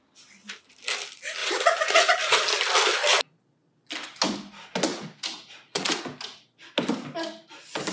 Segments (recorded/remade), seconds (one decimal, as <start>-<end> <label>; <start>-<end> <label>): 0.0-1.4 recorded; 1.4-2.1 remade; 2.1-4.9 recorded; 4.9-6.0 remade; 6.0-7.9 recorded